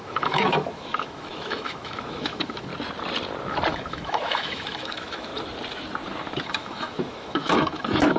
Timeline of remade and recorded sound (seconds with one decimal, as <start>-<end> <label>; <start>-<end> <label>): 0.0-2.7 remade; 2.7-3.7 recorded; 3.7-5.3 remade; 5.3-6.4 recorded; 6.4-8.2 remade